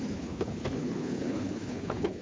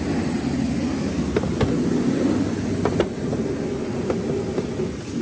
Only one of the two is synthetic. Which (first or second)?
first